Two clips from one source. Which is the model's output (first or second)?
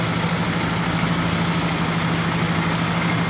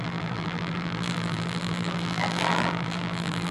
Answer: second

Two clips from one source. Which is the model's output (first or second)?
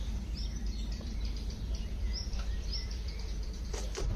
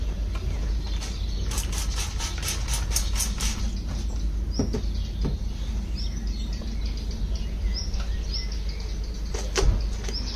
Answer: first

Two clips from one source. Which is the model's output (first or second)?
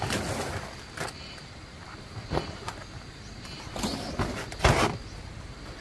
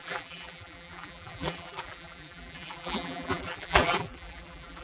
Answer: second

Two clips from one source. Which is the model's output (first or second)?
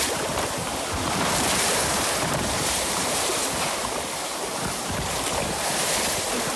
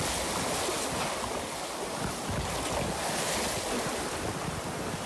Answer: first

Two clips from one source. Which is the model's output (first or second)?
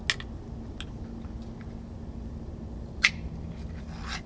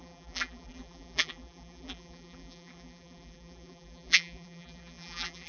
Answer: second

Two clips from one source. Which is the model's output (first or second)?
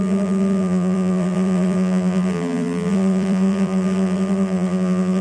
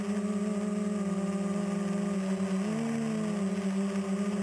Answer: first